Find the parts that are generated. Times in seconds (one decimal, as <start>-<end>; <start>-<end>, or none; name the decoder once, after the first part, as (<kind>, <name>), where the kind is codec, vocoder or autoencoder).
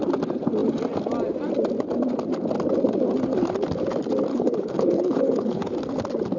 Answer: 4.3-5.7 (codec, HILCodec)